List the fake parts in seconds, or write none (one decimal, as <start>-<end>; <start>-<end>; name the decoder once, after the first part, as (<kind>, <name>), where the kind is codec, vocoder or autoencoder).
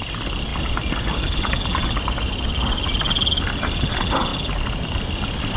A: none